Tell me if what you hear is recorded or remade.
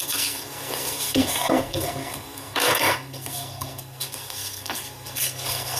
remade